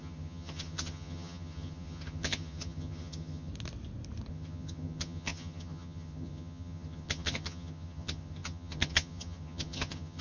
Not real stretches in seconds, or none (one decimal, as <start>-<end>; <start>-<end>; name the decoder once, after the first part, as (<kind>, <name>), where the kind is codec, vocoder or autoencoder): 0.0-3.5 (vocoder, HiFi-GAN); 4.3-10.2